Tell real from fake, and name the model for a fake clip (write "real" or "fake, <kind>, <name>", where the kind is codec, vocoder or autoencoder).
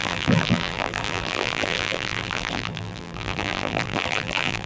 fake, vocoder, BigVGAN v2